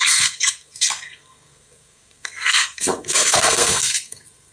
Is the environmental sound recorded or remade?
remade